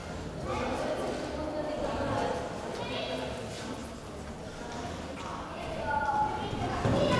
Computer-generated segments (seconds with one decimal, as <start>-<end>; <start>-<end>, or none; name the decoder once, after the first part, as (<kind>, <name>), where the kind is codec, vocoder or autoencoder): none